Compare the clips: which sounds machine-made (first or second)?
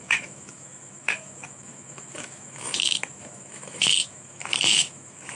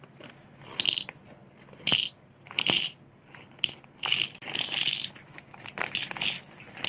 first